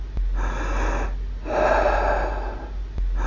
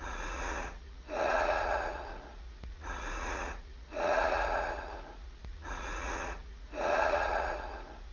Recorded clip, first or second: first